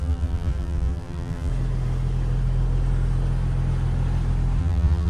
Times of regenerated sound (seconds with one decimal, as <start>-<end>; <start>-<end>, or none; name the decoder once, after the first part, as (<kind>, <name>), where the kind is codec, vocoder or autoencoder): 0.0-1.5 (vocoder, BigVGAN v2); 4.6-5.1